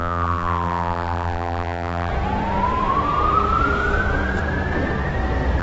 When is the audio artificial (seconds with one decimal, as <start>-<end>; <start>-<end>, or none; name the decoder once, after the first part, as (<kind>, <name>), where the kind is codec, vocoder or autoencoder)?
0.0-2.1 (vocoder, BigVGAN v2)

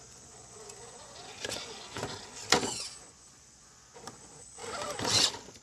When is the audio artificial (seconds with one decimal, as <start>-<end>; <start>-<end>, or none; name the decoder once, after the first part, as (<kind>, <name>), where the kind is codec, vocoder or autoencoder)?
0.0-2.0 (vocoder, Vocos); 2.7-4.6

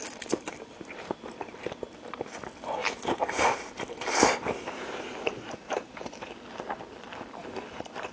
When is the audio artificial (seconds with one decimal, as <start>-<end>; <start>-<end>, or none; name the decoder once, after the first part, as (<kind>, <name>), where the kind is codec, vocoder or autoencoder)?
2.8-6.3 (vocoder, BigVGAN v2)

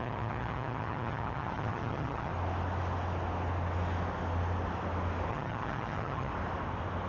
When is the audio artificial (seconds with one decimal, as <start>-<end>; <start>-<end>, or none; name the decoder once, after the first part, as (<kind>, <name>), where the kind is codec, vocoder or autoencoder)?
0.0-2.3 (vocoder, HiFi-GAN); 5.3-6.3

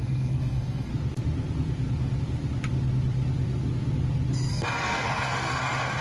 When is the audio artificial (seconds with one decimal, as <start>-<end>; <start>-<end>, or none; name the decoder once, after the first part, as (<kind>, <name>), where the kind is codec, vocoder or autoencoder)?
0.0-0.9 (codec, SNAC); 4.5-6.0

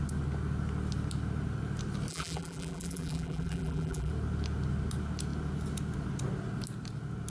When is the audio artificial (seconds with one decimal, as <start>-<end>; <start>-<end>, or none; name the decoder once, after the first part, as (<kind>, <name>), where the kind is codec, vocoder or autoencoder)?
2.1-4.1 (vocoder, BigVGAN v2)

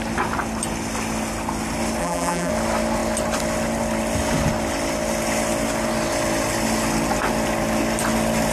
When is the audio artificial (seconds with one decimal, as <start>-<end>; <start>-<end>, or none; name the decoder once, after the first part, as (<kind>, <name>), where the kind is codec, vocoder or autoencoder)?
2.0-2.5 (vocoder, BigVGAN v2)